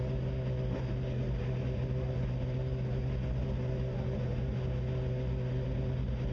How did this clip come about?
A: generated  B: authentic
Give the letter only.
B